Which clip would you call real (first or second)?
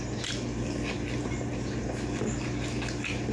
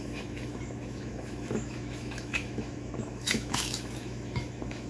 first